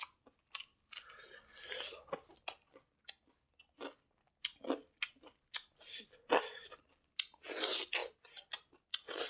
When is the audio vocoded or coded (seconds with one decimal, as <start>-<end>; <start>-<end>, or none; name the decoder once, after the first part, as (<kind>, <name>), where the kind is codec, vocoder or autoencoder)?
none